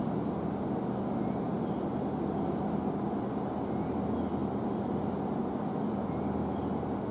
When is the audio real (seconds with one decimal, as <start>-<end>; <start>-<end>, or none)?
0.0-7.1